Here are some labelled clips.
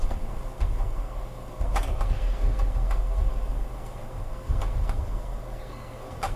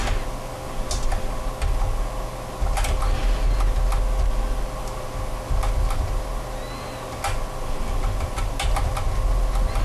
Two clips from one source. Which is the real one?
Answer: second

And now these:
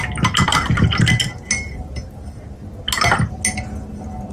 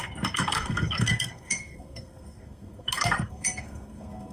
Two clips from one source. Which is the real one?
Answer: first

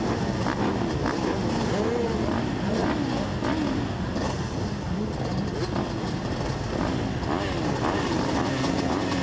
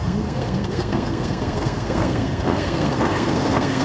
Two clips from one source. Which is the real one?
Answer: first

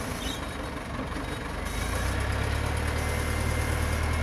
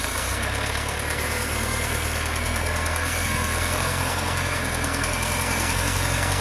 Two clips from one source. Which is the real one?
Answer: first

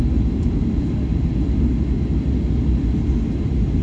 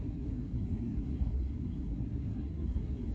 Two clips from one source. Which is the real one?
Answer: first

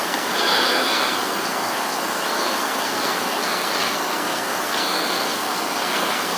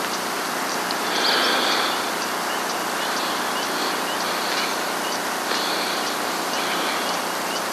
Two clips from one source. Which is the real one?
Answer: second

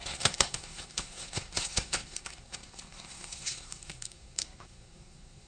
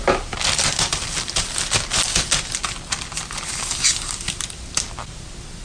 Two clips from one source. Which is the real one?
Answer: second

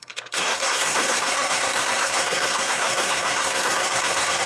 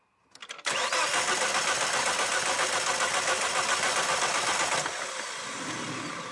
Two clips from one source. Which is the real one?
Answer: second